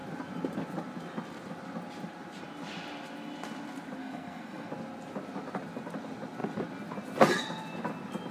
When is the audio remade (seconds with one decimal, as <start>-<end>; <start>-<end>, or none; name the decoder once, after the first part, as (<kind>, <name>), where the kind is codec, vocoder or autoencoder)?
4.0-4.7 (codec, SNAC)